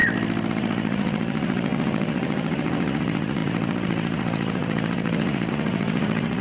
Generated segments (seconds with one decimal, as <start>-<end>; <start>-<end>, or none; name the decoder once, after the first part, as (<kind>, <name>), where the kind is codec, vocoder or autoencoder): 0.5-6.4 (vocoder, Vocos)